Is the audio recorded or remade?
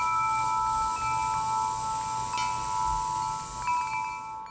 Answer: recorded